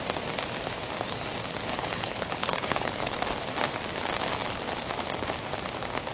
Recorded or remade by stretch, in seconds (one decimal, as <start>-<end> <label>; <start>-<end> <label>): 0.0-1.7 recorded; 1.7-3.2 remade; 3.2-6.1 recorded